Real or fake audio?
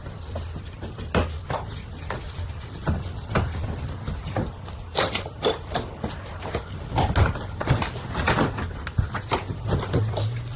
real